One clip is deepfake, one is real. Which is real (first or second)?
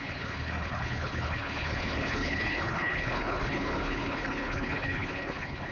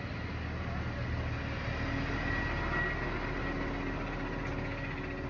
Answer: second